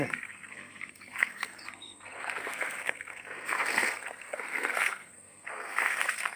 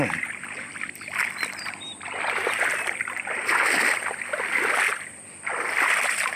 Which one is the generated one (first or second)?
first